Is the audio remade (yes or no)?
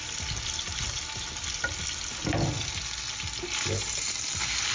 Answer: no